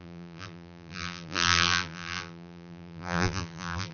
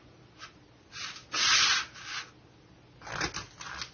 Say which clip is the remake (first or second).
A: first